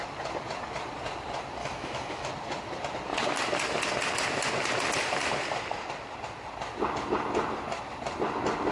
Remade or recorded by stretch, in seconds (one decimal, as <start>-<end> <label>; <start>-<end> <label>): 0.0-1.6 recorded; 1.6-2.3 remade; 2.3-8.7 recorded